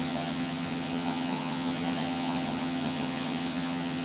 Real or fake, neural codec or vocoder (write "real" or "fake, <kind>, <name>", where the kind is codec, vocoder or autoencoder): fake, vocoder, HiFi-GAN